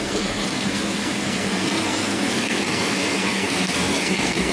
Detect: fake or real fake